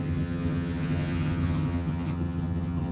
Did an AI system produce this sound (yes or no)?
yes